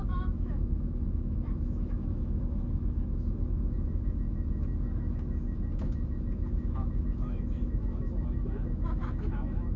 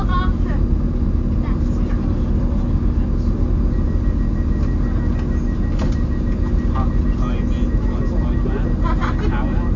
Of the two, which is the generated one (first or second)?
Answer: first